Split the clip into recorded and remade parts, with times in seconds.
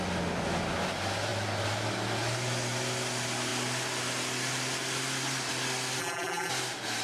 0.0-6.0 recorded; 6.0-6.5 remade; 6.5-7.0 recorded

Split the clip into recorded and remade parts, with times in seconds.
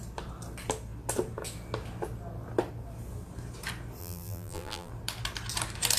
0.0-4.0 recorded; 4.0-4.9 remade; 4.9-6.0 recorded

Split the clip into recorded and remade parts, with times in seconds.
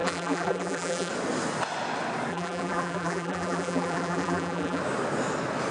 0.0-1.1 remade; 1.1-2.3 recorded; 2.3-4.8 remade; 4.8-5.7 recorded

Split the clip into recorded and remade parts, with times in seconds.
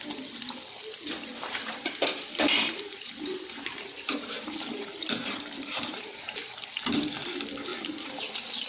0.0-1.3 recorded; 1.3-6.5 remade; 6.5-8.7 recorded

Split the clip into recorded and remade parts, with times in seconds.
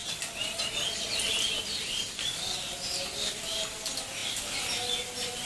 0.0-5.5 recorded